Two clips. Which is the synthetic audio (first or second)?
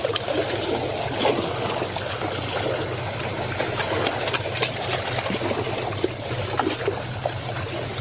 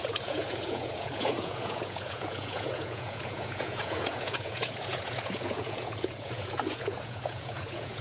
second